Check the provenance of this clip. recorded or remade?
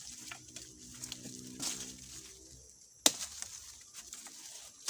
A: recorded